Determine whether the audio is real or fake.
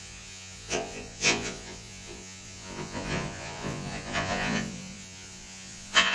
fake